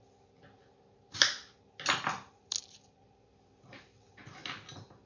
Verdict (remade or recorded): recorded